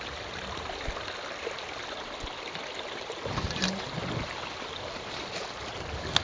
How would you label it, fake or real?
real